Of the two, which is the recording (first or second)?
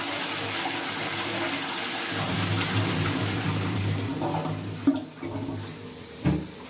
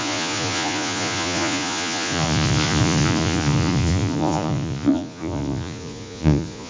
first